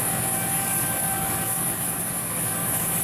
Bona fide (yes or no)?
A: no